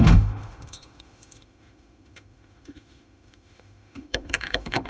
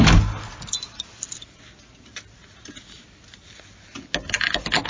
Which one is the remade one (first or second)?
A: first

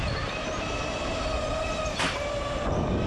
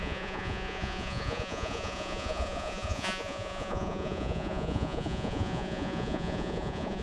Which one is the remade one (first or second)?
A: second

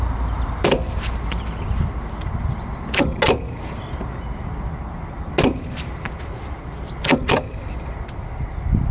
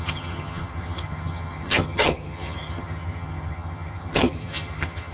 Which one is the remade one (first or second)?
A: second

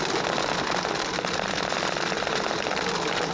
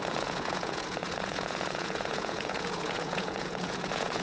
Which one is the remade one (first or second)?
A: second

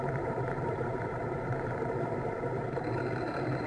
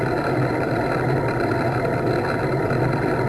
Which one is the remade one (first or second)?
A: first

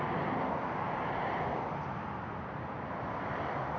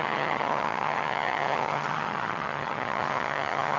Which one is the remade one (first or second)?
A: second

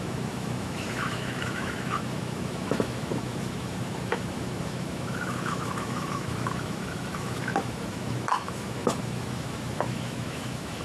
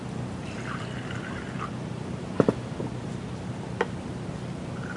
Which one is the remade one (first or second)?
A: first